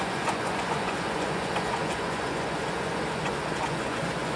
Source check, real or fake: fake